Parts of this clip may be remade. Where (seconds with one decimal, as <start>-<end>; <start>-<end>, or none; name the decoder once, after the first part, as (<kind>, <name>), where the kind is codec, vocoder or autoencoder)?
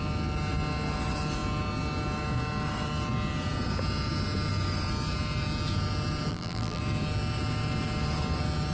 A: 6.3-6.8 (vocoder, BigVGAN v2)